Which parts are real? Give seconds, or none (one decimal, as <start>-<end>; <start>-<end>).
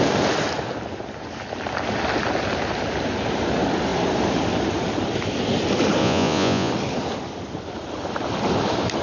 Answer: 0.0-6.0; 6.7-9.0